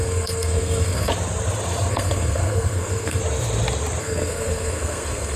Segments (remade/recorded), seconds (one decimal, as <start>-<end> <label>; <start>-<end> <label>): 0.0-1.1 remade; 1.1-1.9 recorded; 1.9-3.2 remade; 3.2-4.0 recorded; 4.0-5.4 remade

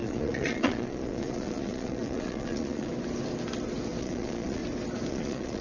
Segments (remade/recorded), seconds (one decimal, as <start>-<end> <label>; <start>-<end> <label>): 0.0-2.9 remade; 2.9-4.0 recorded; 4.0-4.6 remade; 4.6-5.1 recorded; 5.1-5.6 remade

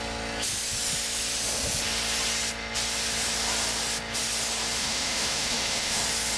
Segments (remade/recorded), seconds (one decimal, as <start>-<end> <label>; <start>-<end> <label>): 0.0-4.8 recorded; 4.8-6.0 remade; 6.0-6.4 recorded